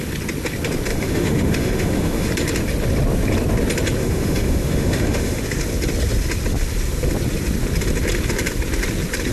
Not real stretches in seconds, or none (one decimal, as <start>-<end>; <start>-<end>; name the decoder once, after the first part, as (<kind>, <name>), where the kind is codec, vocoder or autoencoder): 0.9-2.3 (autoencoder, DAC-VAE); 4.0-5.4